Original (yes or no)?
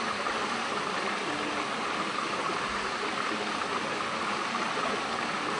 yes